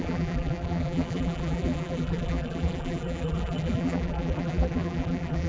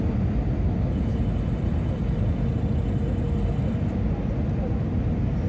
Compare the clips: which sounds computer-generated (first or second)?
first